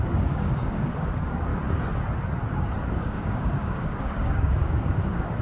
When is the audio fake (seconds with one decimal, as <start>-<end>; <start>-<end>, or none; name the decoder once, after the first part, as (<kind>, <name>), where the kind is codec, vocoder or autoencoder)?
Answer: 0.0-1.5 (codec, DAC); 2.9-5.4